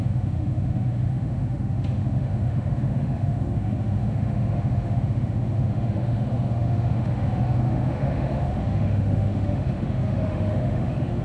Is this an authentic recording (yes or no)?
no